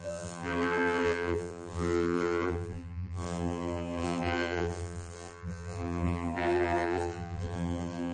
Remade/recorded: remade